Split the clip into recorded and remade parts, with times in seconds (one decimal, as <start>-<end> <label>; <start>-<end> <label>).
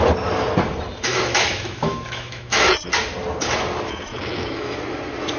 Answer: 0.0-1.1 recorded; 1.1-2.9 remade; 2.9-3.9 recorded; 3.9-4.8 remade; 4.8-5.4 recorded